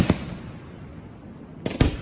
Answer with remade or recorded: recorded